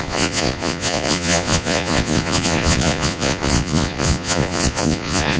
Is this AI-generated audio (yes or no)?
yes